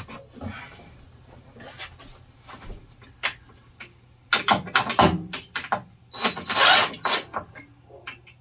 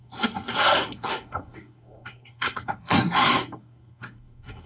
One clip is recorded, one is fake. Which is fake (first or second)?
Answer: second